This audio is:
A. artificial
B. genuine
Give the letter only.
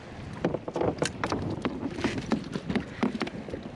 B